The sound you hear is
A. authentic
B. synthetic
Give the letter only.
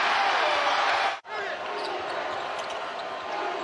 A